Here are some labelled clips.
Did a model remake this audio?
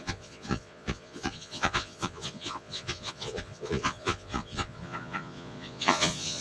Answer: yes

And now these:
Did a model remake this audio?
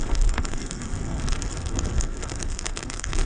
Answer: yes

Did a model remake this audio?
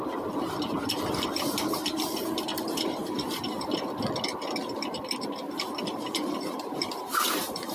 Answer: yes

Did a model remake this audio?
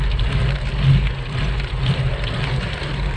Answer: no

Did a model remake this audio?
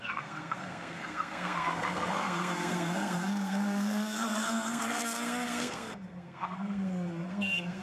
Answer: yes